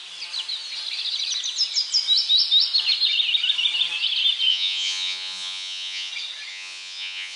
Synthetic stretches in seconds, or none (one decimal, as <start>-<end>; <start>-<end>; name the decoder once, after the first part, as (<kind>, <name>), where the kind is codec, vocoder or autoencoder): 4.5-6.1 (vocoder, Vocos); 6.5-7.4